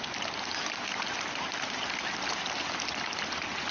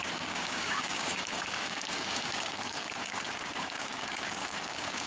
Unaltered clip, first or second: first